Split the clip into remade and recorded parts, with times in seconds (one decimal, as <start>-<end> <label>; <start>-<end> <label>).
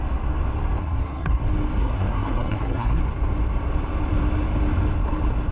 0.0-0.8 recorded; 0.8-1.4 remade; 1.4-1.8 recorded; 1.8-3.0 remade; 3.0-5.5 recorded